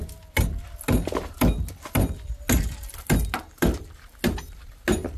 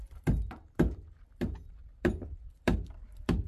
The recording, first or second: first